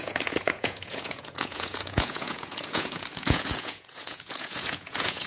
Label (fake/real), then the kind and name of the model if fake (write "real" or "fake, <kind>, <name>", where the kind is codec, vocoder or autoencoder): fake, vocoder, Vocos